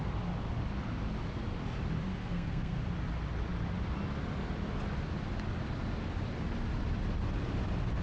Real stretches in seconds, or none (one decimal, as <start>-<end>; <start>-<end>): 0.0-2.2; 2.8-8.0